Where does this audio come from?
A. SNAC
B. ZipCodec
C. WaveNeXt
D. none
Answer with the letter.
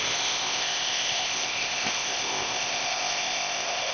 B